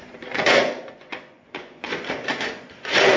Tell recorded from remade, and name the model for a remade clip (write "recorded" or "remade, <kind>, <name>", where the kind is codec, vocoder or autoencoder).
remade, vocoder, Vocos